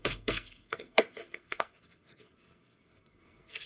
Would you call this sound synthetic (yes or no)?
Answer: yes